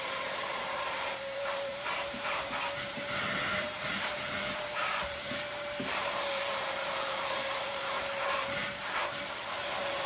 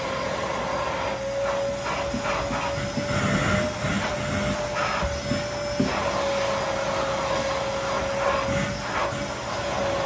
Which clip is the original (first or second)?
second